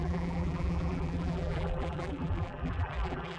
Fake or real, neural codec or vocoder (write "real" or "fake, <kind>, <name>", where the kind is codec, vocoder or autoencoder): fake, vocoder, BigVGAN v2